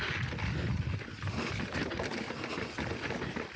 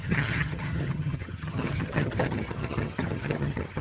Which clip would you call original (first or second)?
first